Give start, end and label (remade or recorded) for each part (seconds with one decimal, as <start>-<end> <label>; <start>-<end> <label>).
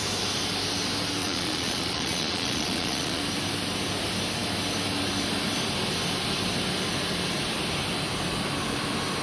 0.0-1.2 recorded; 1.2-3.2 remade; 3.2-9.2 recorded